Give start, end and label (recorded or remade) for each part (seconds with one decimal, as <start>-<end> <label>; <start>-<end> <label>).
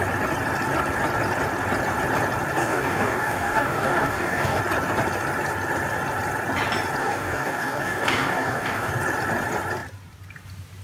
0.0-2.6 recorded; 2.6-4.6 remade; 4.6-7.0 recorded; 7.0-8.9 remade; 8.9-10.8 recorded